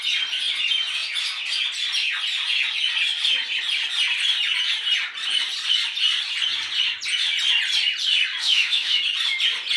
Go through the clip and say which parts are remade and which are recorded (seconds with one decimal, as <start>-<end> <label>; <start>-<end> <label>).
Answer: 0.0-8.4 recorded; 8.4-9.0 remade; 9.0-9.8 recorded